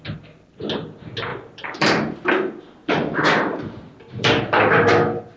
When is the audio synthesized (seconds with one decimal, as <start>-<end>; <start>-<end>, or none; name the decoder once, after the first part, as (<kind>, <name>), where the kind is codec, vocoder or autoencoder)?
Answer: 1.3-2.3 (vocoder, BigVGAN v2); 2.8-3.9